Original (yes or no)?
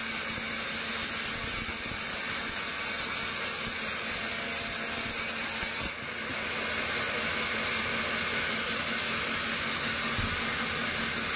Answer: yes